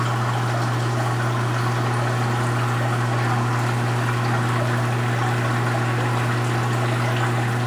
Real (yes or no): yes